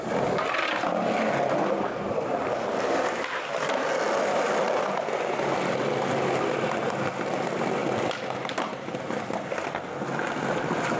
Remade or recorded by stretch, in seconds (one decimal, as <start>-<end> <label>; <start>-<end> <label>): 0.0-11.0 recorded